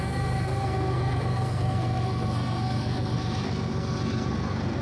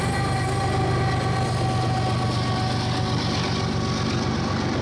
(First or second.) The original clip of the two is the second